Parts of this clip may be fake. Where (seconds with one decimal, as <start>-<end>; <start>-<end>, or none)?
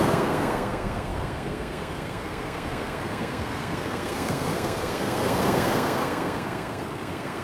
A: 0.0-7.4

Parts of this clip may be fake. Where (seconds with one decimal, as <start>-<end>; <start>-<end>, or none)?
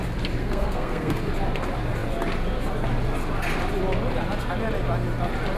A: 0.4-1.3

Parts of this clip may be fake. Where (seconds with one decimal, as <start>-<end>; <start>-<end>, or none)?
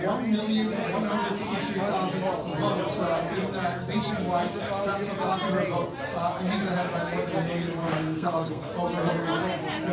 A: 7.8-8.7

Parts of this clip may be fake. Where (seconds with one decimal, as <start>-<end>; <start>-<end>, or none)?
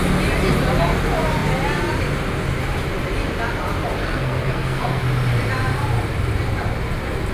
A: 4.0-5.0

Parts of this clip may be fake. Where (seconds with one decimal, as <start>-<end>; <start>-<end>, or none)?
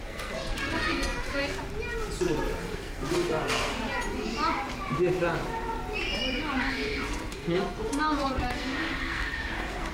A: 0.0-1.4; 2.6-3.7; 6.6-9.9